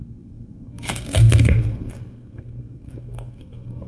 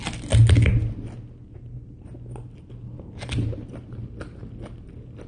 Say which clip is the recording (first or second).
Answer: second